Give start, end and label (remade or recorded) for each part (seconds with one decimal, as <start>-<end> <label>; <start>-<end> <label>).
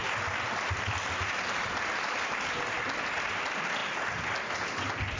0.0-5.2 recorded